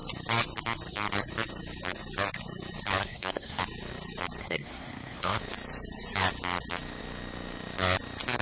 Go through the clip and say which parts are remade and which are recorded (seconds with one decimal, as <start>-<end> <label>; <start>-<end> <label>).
0.0-3.0 recorded; 3.0-3.6 remade; 3.6-4.4 recorded; 4.4-5.4 remade; 5.4-8.4 recorded